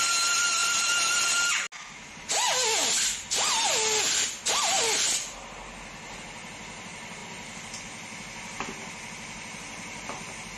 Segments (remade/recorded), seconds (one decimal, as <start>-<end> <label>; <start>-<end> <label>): 0.0-10.6 recorded